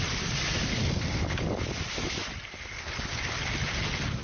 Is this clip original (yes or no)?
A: yes